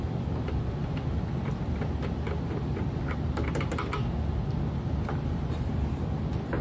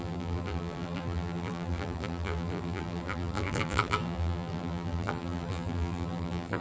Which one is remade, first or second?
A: second